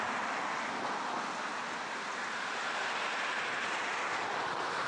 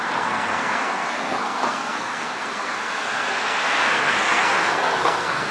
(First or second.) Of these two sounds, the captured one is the first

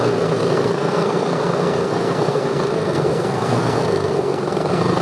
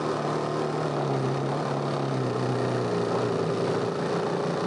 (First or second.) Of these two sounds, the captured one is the second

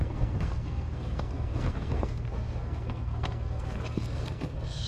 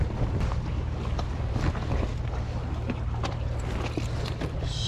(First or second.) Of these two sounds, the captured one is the second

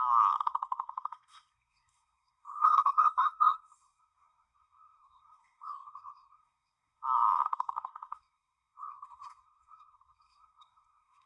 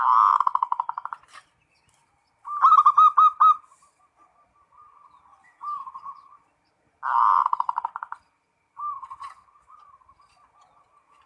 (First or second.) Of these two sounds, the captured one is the second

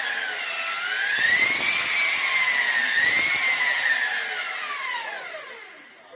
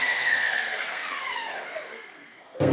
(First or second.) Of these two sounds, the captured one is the first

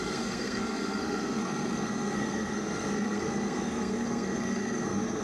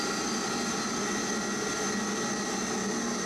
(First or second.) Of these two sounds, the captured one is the second